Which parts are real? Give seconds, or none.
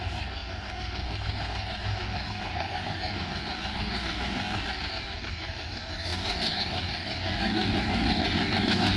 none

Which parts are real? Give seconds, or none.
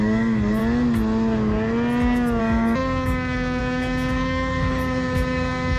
0.6-2.4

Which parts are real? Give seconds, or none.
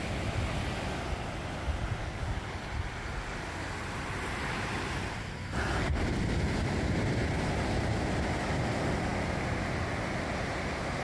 0.0-2.0; 2.6-11.0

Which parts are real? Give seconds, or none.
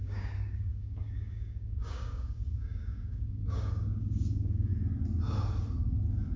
4.7-6.4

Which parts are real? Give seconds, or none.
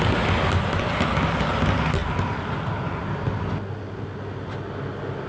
0.0-5.3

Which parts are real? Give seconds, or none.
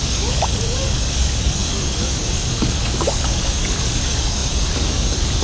none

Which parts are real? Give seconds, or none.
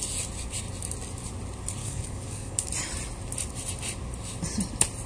0.0-1.8; 2.7-5.1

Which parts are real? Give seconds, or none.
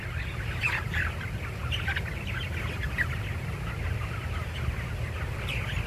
0.0-5.9